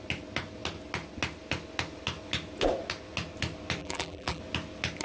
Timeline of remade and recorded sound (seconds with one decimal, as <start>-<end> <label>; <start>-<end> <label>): 0.0-3.8 recorded; 3.8-4.4 remade; 4.4-5.0 recorded